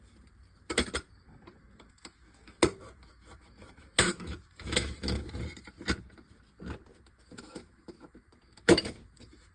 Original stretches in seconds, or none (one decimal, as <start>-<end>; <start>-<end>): 0.0-1.6; 5.3-6.9